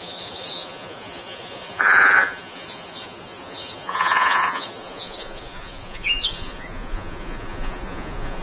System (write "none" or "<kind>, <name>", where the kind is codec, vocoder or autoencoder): vocoder, Vocos